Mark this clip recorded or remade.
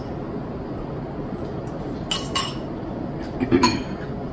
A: recorded